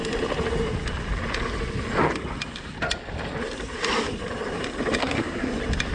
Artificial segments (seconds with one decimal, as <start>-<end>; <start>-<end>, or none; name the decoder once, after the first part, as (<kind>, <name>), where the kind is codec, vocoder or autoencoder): 5.0-5.5 (codec, SNAC)